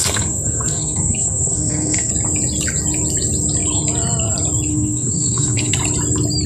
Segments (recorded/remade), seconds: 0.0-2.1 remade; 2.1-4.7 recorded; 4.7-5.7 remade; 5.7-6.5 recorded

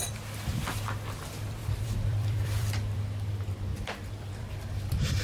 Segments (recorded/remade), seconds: 0.0-1.6 recorded; 1.6-3.3 remade; 3.3-3.7 recorded; 3.7-4.7 remade; 4.7-5.2 recorded

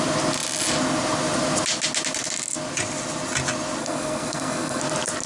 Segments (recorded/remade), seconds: 0.0-3.8 recorded; 3.8-4.8 remade; 4.8-5.3 recorded

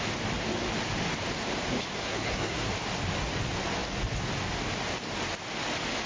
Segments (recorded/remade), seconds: 0.0-2.0 recorded; 2.0-2.7 remade; 2.7-6.1 recorded

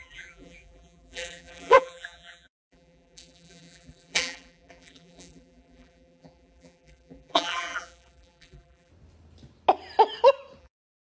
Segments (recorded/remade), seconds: 0.0-8.9 remade; 8.9-10.6 recorded; 10.6-11.1 remade

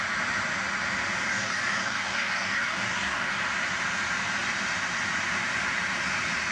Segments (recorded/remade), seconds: 0.0-1.3 recorded; 1.3-3.4 remade; 3.4-6.5 recorded

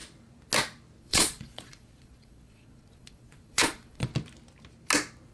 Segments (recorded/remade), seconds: 0.0-1.0 recorded; 1.0-4.1 remade; 4.1-5.3 recorded

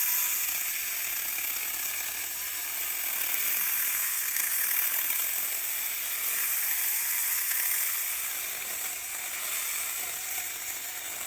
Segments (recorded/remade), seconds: 0.0-3.9 recorded; 3.9-4.5 remade; 4.5-11.3 recorded